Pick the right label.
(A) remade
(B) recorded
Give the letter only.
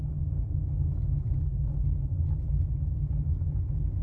B